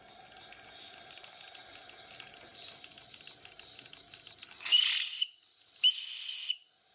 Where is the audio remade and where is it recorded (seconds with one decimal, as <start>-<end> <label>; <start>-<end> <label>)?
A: 0.0-6.9 recorded